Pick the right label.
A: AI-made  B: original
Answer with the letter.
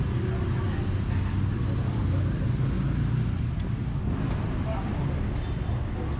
B